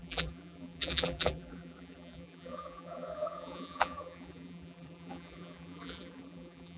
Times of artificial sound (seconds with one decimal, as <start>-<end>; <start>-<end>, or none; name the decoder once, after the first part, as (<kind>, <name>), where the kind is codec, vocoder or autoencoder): 0.0-6.8 (vocoder, BigVGAN v2)